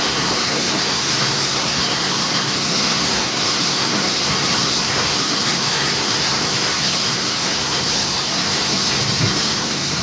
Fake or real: fake